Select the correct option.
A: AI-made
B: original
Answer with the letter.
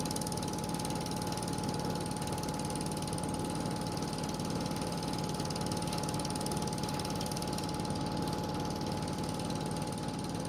B